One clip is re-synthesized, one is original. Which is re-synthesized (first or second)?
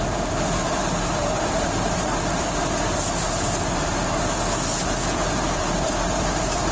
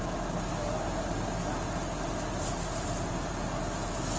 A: first